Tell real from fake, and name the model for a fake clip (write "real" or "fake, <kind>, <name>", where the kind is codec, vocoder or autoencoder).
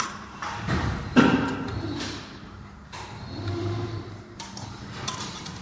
fake, vocoder, BigVGAN v2